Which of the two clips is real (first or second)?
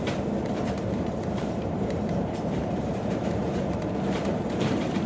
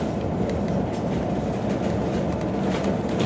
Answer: second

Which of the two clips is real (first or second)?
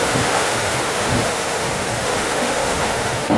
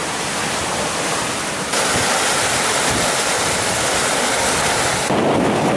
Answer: second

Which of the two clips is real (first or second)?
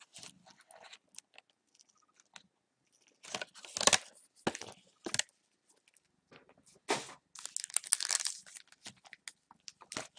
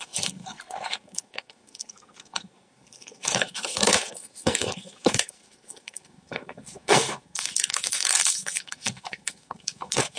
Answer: first